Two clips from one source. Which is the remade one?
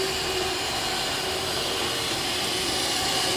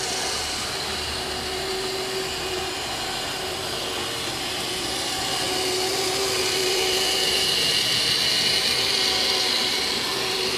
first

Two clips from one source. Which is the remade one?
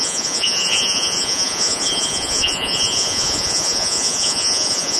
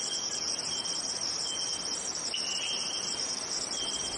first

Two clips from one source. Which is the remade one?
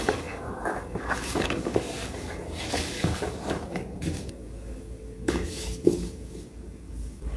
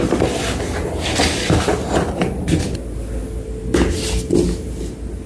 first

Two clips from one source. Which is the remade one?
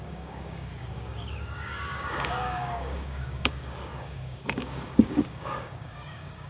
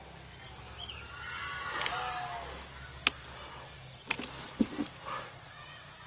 first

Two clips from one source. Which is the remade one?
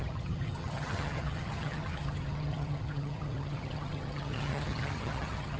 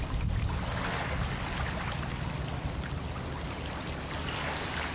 first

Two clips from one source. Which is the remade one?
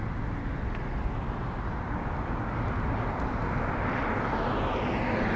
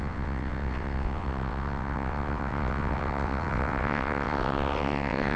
second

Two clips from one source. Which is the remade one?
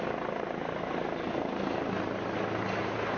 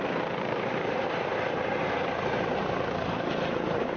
second